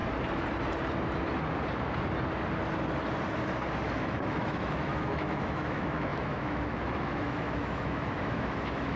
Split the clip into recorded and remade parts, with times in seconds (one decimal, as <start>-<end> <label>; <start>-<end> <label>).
0.0-4.0 recorded; 4.0-9.0 remade